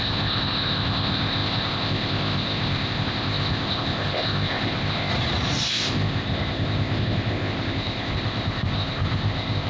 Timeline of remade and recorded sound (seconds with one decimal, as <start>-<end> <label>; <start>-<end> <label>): 0.0-5.1 remade; 5.1-5.7 recorded; 5.7-9.7 remade